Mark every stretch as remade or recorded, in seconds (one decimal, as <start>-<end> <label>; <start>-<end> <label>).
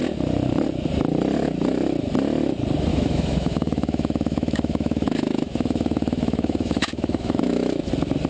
0.0-2.9 recorded; 2.9-7.9 remade; 7.9-8.3 recorded